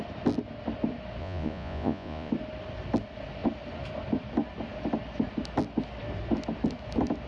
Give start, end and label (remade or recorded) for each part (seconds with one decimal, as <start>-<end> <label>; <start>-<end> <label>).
0.0-1.2 recorded; 1.2-2.3 remade; 2.3-7.3 recorded